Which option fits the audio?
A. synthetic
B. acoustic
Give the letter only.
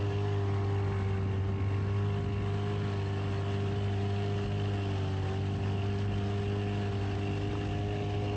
B